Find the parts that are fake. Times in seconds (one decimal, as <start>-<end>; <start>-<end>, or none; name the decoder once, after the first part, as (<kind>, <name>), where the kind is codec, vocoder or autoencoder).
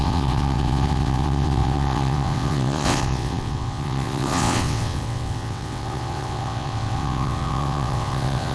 0.0-8.5 (vocoder, WaveNeXt)